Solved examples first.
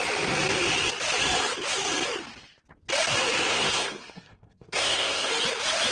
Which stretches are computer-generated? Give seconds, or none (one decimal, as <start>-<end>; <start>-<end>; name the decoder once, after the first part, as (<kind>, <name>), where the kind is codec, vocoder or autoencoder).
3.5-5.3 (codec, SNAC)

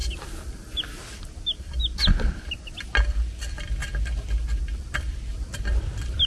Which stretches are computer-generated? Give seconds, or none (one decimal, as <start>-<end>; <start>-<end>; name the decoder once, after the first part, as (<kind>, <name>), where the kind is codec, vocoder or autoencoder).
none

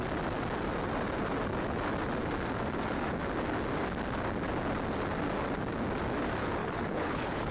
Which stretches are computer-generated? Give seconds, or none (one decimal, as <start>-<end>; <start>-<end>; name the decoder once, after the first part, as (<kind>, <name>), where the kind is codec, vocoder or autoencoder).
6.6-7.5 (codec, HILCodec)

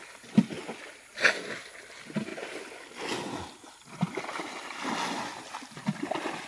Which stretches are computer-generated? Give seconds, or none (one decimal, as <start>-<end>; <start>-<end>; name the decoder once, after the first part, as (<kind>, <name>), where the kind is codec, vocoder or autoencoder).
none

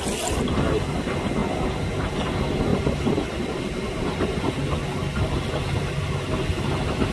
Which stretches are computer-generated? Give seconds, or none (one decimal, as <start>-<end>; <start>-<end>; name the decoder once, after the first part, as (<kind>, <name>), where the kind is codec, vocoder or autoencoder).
2.7-3.6 (vocoder, BigVGAN v2)